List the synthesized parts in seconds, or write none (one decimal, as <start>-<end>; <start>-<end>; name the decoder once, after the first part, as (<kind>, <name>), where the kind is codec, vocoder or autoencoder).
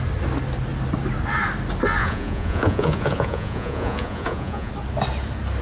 2.0-4.7 (vocoder, Vocos)